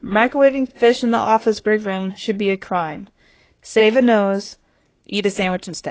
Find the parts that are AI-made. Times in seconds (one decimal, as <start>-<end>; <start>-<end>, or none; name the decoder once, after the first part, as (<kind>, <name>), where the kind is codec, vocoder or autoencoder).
0.0-3.8 (codec, SNAC); 4.4-5.9

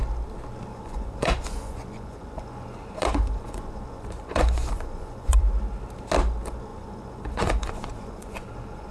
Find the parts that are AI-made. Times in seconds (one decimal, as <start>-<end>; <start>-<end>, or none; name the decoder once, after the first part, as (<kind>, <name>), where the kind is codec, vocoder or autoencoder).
0.7-5.4 (vocoder, Vocos); 6.7-8.9

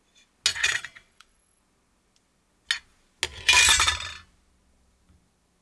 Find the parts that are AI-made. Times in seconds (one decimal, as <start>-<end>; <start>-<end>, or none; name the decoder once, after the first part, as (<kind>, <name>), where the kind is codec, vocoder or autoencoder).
0.5-1.6 (vocoder, WaveNeXt)

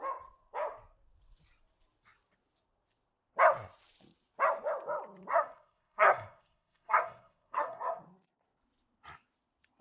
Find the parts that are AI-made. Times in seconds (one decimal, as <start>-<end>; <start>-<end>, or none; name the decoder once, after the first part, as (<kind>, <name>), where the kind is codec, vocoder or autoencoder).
5.3-8.0 (codec, SNAC)

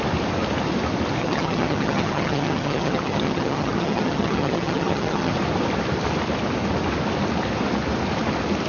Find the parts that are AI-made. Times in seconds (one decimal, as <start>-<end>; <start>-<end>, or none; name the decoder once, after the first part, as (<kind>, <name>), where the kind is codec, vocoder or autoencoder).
1.2-5.3 (vocoder, HiFi-GAN)

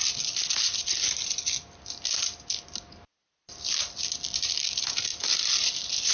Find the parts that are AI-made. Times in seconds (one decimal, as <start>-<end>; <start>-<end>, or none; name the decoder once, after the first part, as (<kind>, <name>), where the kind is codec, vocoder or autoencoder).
none

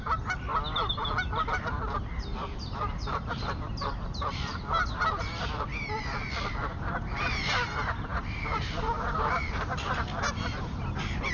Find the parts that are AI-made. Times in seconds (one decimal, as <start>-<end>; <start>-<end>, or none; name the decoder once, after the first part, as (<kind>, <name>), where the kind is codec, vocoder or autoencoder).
0.0-0.5 (vocoder, BigVGAN v2); 1.5-5.7; 6.7-11.3

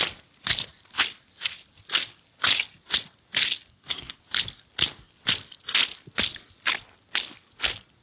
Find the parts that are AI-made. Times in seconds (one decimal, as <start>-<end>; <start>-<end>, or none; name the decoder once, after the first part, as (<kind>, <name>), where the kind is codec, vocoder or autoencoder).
3.7-4.2 (codec, SNAC)